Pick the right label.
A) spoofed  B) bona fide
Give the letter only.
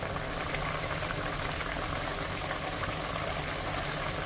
B